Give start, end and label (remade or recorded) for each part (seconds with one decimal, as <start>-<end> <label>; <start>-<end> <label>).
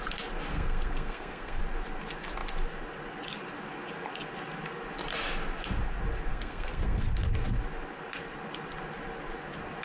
0.0-0.5 recorded; 0.5-1.6 remade; 1.6-6.3 recorded; 6.3-7.0 remade; 7.0-9.8 recorded